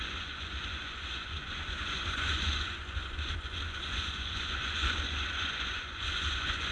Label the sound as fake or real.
fake